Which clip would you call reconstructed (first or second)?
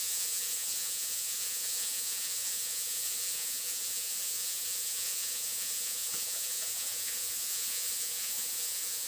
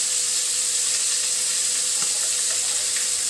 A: first